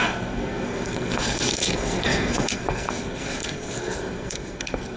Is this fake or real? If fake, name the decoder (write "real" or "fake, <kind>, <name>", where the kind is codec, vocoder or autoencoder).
fake, codec, SNAC